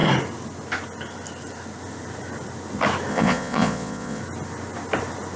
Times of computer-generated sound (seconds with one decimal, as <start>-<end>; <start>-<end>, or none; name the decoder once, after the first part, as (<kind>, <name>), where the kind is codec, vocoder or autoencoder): 3.1-4.2 (vocoder, Vocos)